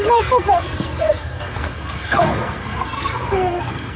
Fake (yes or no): yes